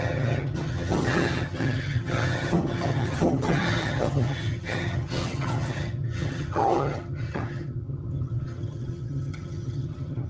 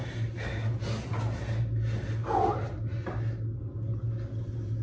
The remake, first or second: first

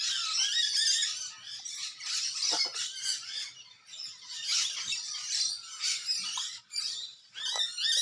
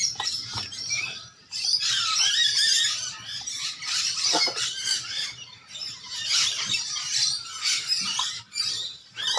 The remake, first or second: second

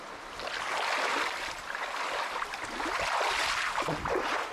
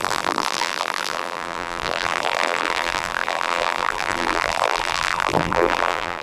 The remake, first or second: second